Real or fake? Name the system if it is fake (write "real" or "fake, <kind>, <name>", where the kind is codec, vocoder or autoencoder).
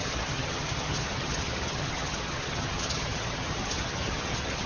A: fake, vocoder, HiFi-GAN